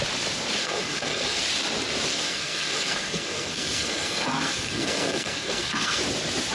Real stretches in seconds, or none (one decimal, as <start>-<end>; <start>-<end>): 0.0-0.6; 1.4-2.1; 6.0-6.5